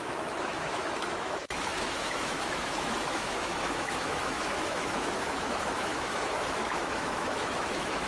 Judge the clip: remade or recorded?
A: remade